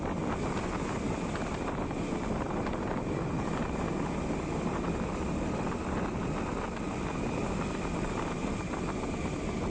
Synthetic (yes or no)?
no